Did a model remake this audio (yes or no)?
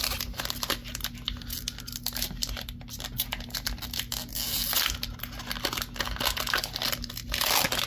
no